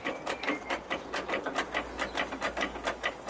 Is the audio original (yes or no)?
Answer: yes